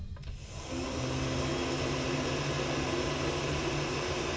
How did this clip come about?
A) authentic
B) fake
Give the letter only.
A